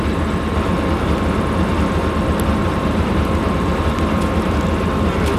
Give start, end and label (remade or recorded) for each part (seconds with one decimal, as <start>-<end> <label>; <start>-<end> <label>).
0.0-2.6 recorded; 2.6-3.8 remade; 3.8-5.4 recorded